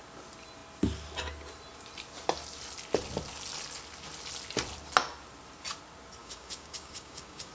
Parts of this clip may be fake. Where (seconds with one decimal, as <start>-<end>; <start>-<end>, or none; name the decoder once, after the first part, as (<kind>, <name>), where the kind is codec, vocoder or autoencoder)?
6.2-7.5 (codec, DAC)